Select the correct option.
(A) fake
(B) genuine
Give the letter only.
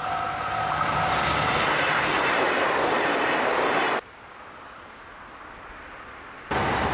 B